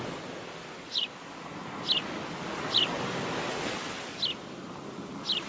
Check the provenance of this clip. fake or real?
real